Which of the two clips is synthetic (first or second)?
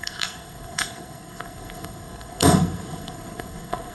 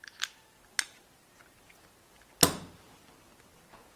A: first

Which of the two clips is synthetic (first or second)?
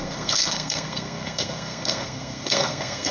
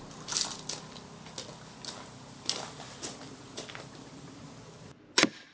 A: first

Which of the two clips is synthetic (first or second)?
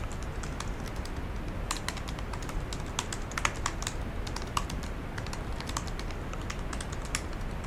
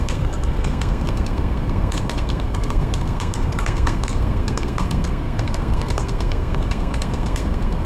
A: second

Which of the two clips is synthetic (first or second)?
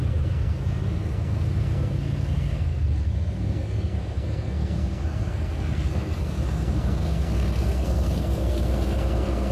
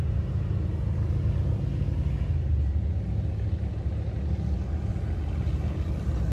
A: first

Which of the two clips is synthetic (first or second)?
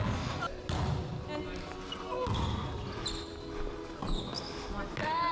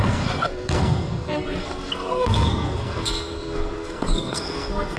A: second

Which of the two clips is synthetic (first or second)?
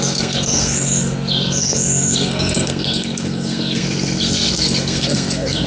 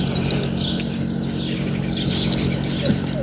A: first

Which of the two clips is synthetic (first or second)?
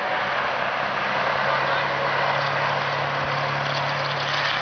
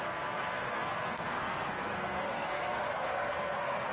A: second